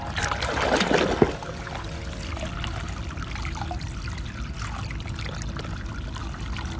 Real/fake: real